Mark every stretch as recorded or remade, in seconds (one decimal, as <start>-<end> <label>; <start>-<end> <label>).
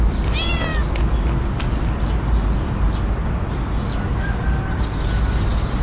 0.0-5.8 recorded